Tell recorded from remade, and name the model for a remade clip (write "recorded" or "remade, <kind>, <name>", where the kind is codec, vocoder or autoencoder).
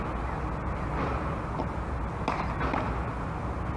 recorded